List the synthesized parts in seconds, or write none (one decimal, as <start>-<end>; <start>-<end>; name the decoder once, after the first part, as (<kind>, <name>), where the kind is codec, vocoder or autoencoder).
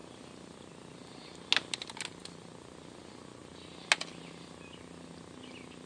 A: none